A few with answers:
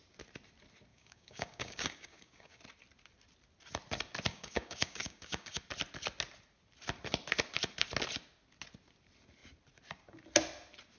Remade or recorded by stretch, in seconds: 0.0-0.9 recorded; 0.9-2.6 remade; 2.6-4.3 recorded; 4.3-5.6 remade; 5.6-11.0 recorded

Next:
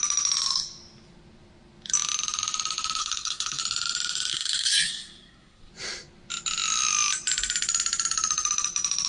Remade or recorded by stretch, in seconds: 0.0-3.0 recorded; 3.0-3.6 remade; 3.6-4.3 recorded; 4.3-5.7 remade; 5.7-9.1 recorded

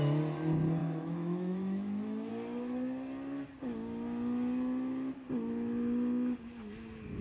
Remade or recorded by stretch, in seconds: 0.0-0.8 recorded; 0.8-2.3 remade; 2.3-7.2 recorded

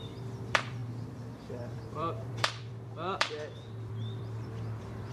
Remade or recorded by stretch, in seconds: 0.0-5.1 remade

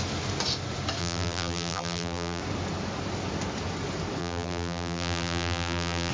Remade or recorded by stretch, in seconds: 0.0-1.0 recorded; 1.0-2.4 remade; 2.4-4.2 recorded; 4.2-6.1 remade

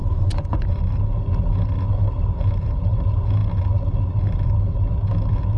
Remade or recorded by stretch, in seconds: 0.0-0.8 remade; 0.8-5.6 recorded